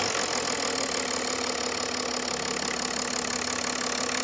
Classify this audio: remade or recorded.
recorded